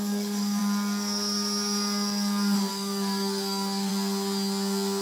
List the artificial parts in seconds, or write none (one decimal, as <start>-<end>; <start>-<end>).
0.0-0.6; 2.7-3.9